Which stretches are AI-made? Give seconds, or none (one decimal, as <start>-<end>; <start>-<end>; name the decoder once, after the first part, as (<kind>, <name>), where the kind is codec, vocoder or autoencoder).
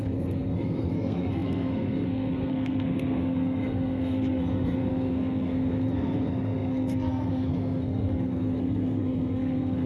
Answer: 0.0-9.9 (codec, SNAC)